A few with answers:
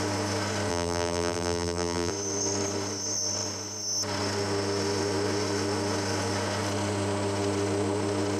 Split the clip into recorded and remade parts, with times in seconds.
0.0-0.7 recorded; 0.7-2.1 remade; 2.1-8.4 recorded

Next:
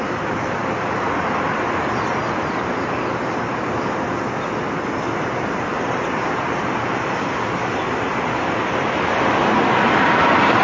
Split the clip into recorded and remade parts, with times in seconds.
0.0-10.6 recorded

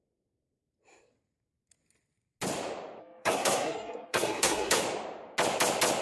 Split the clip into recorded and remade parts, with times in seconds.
0.0-3.0 recorded; 3.0-4.8 remade; 4.8-6.0 recorded

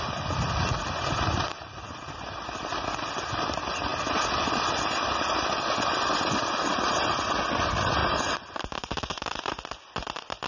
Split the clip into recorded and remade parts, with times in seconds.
0.0-0.8 recorded; 0.8-2.7 remade; 2.7-8.0 recorded; 8.0-9.6 remade; 9.6-10.5 recorded

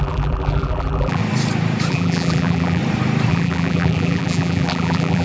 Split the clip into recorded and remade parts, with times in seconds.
0.0-1.2 remade; 1.2-1.9 recorded; 1.9-2.8 remade; 2.8-3.3 recorded; 3.3-5.2 remade

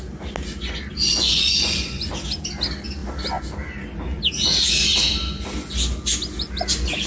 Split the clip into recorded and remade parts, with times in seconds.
0.0-1.1 recorded; 1.1-2.1 remade; 2.1-7.1 recorded

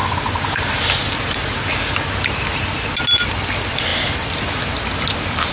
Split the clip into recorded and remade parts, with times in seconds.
0.0-5.5 recorded